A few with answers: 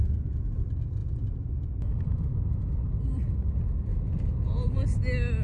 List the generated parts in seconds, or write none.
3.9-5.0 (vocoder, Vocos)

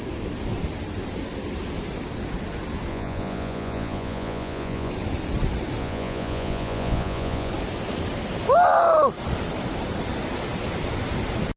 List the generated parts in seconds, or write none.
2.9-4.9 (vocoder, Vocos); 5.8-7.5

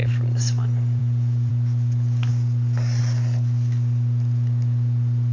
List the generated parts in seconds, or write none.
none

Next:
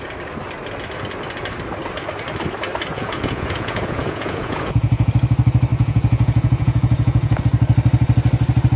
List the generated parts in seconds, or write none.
2.9-5.1 (vocoder, Vocos); 5.7-7.4

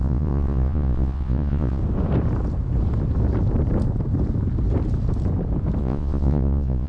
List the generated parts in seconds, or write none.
0.0-1.8 (vocoder, Vocos); 5.8-6.9

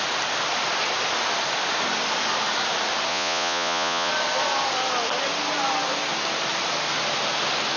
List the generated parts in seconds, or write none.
3.1-4.1 (vocoder, Vocos)